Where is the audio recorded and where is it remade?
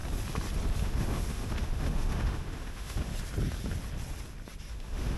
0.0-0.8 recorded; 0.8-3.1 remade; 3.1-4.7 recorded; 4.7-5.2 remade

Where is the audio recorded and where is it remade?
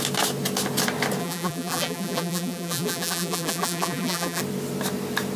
0.0-1.2 recorded; 1.2-4.4 remade; 4.4-5.4 recorded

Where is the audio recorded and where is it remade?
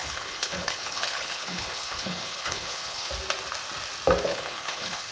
0.0-3.1 remade; 3.1-4.3 recorded; 4.3-5.1 remade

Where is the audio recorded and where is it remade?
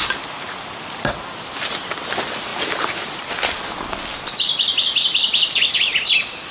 0.0-6.5 recorded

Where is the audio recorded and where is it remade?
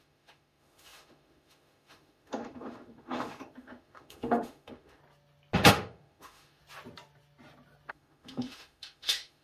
0.0-5.0 remade; 5.0-5.7 recorded; 5.7-6.6 remade; 6.6-7.9 recorded; 7.9-9.4 remade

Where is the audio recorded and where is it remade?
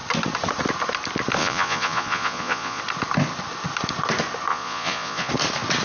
0.0-1.4 recorded; 1.4-2.8 remade; 2.8-4.5 recorded; 4.5-5.3 remade; 5.3-5.8 recorded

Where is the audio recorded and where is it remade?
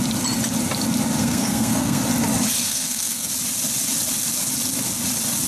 0.0-1.2 recorded; 1.2-2.0 remade; 2.0-2.6 recorded; 2.6-3.3 remade; 3.3-5.5 recorded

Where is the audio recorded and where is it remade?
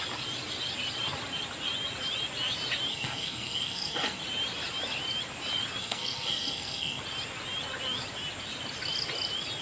0.0-2.9 recorded; 2.9-4.2 remade; 4.2-5.8 recorded; 5.8-7.0 remade; 7.0-9.6 recorded